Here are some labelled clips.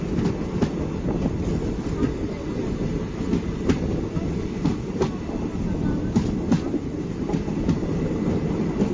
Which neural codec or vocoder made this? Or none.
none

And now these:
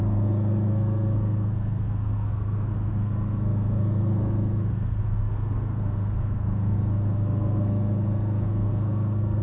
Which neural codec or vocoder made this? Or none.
codec, SNAC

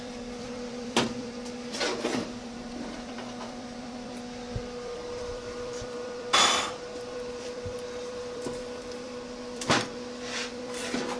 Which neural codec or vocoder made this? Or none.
vocoder, BigVGAN v2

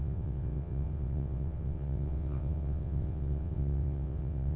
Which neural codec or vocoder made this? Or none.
vocoder, WaveNeXt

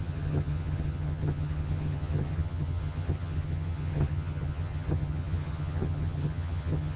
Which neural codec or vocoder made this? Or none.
vocoder, HiFi-GAN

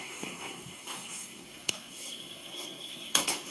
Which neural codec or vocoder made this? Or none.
codec, SNAC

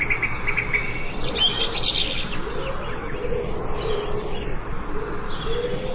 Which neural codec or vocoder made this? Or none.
none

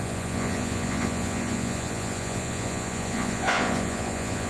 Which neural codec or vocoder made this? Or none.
vocoder, Vocos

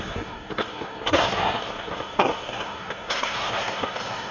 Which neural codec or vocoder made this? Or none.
codec, SNAC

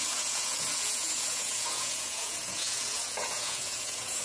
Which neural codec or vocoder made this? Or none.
vocoder, Vocos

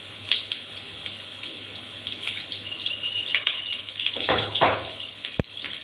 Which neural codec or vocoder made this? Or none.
codec, HILCodec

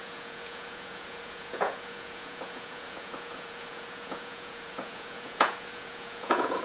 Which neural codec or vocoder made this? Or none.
vocoder, Vocos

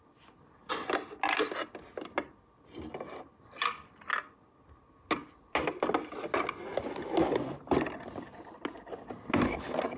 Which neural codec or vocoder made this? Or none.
none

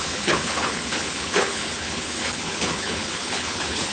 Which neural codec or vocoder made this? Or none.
codec, HILCodec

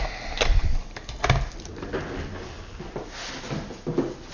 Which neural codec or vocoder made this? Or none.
none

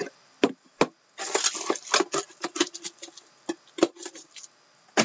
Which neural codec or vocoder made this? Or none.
none